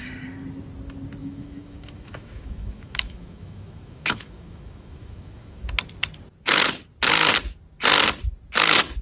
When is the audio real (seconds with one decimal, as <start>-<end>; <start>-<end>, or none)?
0.0-1.2; 5.6-9.0